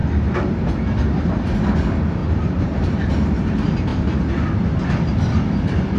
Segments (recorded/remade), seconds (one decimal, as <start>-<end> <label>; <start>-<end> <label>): 0.0-2.2 recorded; 2.2-3.1 remade; 3.1-6.0 recorded